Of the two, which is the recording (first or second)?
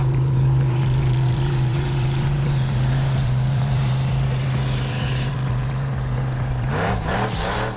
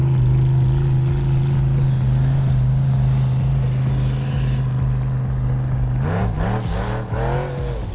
second